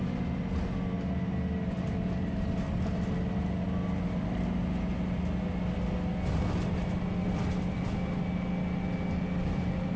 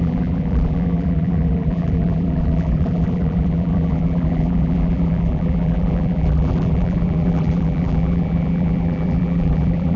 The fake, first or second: second